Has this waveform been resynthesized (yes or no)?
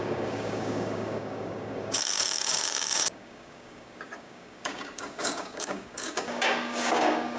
yes